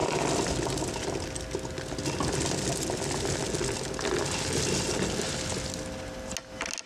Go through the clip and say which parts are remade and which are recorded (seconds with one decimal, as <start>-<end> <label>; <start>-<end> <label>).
0.0-0.9 remade; 0.9-6.9 recorded